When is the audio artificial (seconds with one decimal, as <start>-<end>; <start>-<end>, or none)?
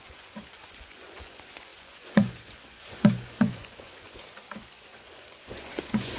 0.0-6.2